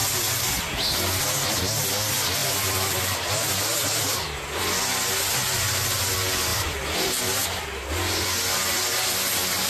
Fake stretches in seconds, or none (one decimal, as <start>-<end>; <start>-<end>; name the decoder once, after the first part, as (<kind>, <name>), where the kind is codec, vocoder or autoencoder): 2.4-3.3 (vocoder, BigVGAN v2); 6.5-7.2